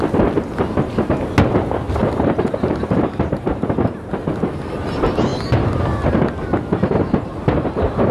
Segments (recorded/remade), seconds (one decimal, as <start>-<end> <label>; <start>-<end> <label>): 0.0-2.0 recorded; 2.0-4.1 remade; 4.1-5.3 recorded; 5.3-6.1 remade; 6.1-8.1 recorded